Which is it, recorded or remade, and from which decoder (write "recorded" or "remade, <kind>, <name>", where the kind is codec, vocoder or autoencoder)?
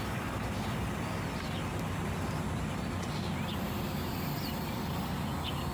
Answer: recorded